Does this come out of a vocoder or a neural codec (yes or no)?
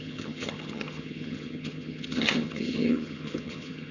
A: yes